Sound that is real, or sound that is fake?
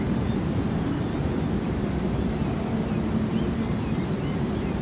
real